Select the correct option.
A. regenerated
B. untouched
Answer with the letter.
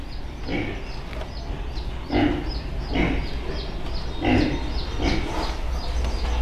B